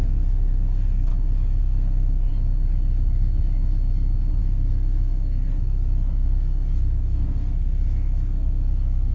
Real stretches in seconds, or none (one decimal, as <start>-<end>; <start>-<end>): 1.1-1.6; 2.3-4.4